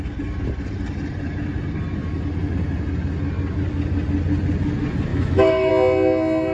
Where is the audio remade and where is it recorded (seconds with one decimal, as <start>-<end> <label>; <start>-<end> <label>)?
0.0-5.1 recorded; 5.1-5.7 remade; 5.7-6.5 recorded